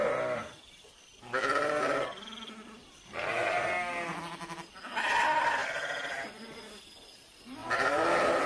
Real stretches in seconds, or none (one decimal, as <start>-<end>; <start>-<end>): 0.0-8.5

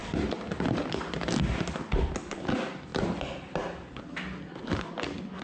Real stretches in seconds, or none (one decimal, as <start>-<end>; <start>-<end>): 0.0-5.4

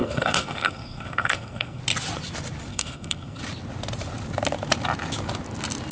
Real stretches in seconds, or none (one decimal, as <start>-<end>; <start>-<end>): 1.8-2.7; 3.4-5.9